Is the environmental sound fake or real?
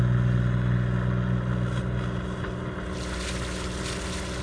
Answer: real